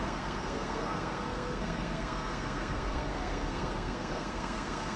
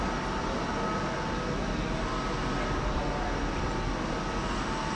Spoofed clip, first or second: first